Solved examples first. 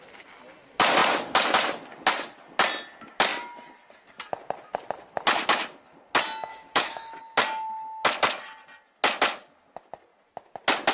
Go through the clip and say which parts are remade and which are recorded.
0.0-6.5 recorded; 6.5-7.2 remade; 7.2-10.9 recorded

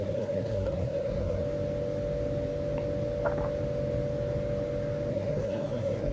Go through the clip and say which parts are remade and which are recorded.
0.0-1.4 remade; 1.4-5.1 recorded; 5.1-6.1 remade

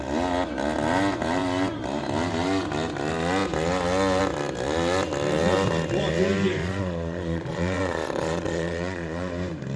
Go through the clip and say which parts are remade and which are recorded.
0.0-6.6 recorded; 6.6-9.3 remade; 9.3-9.8 recorded

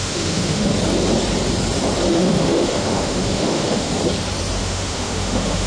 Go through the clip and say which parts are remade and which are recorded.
0.0-0.7 remade; 0.7-2.1 recorded; 2.1-3.9 remade; 3.9-4.6 recorded; 4.6-5.7 remade

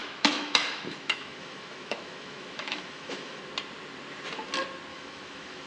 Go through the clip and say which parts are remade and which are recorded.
0.0-3.4 remade; 3.4-4.9 recorded; 4.9-5.7 remade

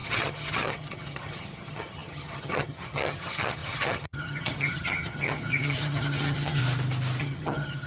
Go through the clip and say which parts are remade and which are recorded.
0.0-6.6 remade; 6.6-7.2 recorded; 7.2-7.9 remade

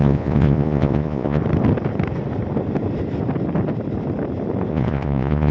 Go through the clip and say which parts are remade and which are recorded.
0.0-1.4 remade; 1.4-4.7 recorded; 4.7-5.5 remade